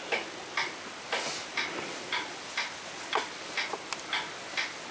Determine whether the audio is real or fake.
real